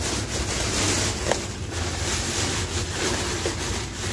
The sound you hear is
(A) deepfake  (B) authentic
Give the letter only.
B